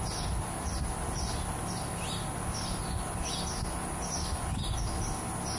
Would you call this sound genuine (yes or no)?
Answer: yes